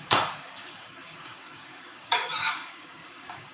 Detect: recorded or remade remade